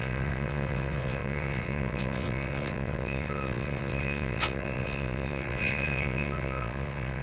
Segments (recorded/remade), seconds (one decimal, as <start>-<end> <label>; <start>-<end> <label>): 0.0-7.2 remade